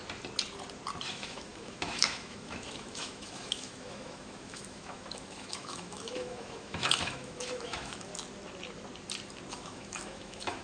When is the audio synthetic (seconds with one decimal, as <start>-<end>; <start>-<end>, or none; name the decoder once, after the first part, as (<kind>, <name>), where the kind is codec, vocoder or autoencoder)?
1.1-8.1 (autoencoder, DAC-VAE); 9.5-10.6